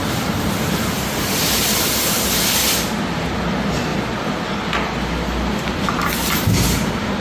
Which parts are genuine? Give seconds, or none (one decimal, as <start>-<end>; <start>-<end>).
0.0-7.2